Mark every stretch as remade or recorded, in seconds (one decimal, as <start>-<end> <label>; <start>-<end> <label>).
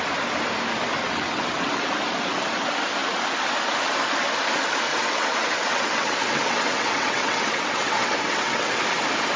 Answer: 0.0-1.0 recorded; 1.0-1.9 remade; 1.9-4.9 recorded; 4.9-8.8 remade; 8.8-9.4 recorded